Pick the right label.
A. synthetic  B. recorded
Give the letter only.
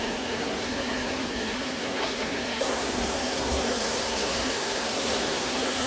A